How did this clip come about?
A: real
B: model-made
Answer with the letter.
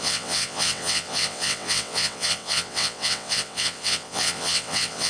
B